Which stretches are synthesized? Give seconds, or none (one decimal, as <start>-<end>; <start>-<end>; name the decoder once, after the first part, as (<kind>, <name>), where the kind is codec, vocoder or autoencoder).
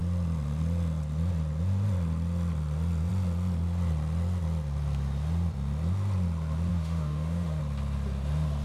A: 6.7-7.6 (autoencoder, DAC-VAE)